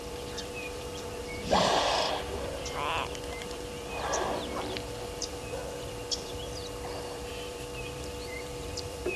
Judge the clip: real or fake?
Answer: fake